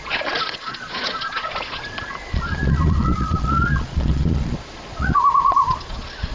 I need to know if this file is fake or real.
fake